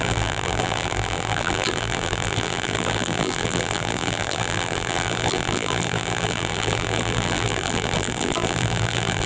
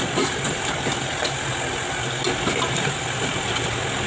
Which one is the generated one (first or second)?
first